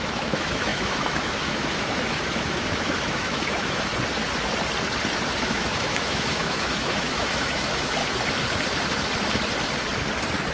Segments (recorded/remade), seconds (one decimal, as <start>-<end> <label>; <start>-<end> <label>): 0.0-3.9 remade; 3.9-5.4 recorded; 5.4-8.0 remade; 8.0-10.5 recorded